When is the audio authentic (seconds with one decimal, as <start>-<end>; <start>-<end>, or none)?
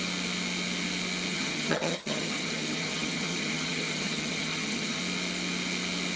0.0-1.3; 5.0-6.2